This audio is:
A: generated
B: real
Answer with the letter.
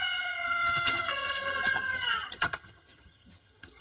A